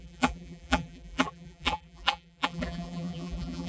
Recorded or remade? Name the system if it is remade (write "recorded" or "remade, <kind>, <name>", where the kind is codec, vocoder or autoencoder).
remade, vocoder, BigVGAN v2